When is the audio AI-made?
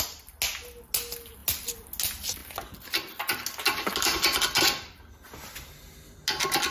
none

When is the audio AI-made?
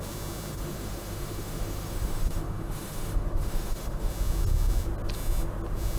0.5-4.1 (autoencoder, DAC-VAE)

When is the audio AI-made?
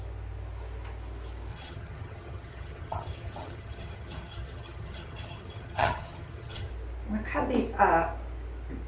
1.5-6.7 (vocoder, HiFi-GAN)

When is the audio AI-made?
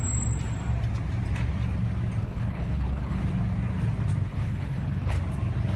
2.2-3.2 (codec, HILCodec); 4.3-5.2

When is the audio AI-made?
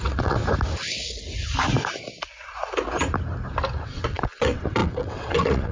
0.0-0.4 (vocoder, WaveNeXt); 3.8-5.7